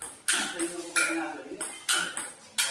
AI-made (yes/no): no